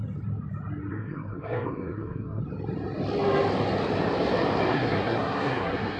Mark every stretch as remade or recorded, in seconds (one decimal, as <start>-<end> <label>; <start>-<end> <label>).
0.0-0.9 recorded; 0.9-2.4 remade; 2.4-4.7 recorded; 4.7-6.0 remade